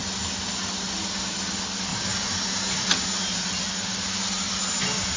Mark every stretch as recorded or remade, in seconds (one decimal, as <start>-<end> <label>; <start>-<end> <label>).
0.0-5.2 recorded

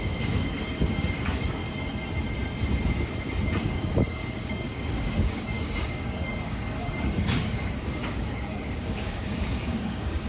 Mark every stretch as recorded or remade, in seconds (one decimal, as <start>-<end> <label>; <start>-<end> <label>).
0.0-1.6 remade; 1.6-3.6 recorded; 3.6-10.3 remade

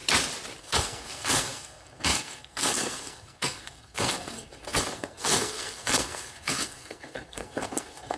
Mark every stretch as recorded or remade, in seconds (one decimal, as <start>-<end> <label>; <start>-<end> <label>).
0.0-0.6 recorded; 0.6-8.2 remade

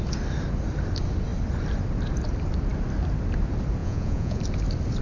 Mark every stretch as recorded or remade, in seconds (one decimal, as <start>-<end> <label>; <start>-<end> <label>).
0.0-3.8 recorded; 3.8-4.4 remade; 4.4-5.0 recorded

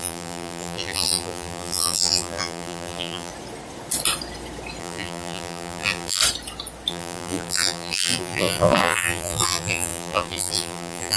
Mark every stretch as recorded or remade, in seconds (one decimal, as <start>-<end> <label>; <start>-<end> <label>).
0.0-3.3 remade; 3.3-4.8 recorded; 4.8-6.2 remade; 6.2-6.9 recorded; 6.9-11.2 remade

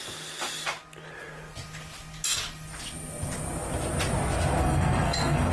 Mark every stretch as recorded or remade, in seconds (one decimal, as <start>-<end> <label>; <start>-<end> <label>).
0.0-4.6 recorded; 4.6-5.5 remade

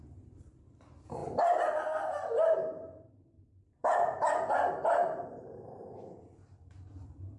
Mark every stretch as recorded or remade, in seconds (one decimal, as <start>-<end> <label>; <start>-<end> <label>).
0.0-7.4 remade

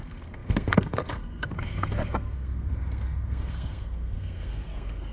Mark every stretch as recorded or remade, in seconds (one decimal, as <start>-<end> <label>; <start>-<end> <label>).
0.0-5.1 remade